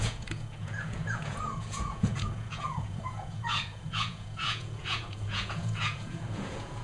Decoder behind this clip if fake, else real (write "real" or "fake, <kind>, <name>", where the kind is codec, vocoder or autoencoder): fake, vocoder, Vocos